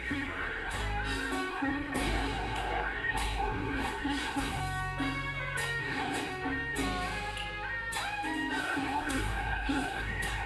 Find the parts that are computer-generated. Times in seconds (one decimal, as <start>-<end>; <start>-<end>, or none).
0.0-0.8; 1.5-4.6; 5.8-6.3; 8.6-10.5